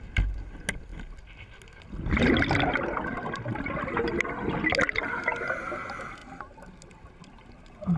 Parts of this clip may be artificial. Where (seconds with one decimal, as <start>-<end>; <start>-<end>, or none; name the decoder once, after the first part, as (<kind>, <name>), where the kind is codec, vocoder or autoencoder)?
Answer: none